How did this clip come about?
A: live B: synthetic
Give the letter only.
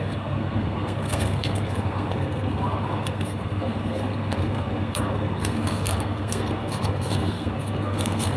B